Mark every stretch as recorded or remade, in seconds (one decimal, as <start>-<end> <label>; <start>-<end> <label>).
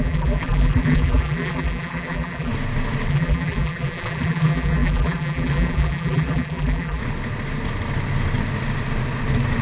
0.0-2.5 remade; 2.5-3.1 recorded; 3.1-7.0 remade; 7.0-9.6 recorded